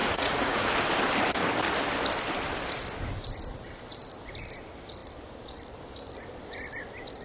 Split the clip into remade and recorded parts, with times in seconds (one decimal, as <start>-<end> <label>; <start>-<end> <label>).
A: 0.0-0.7 remade; 0.7-7.2 recorded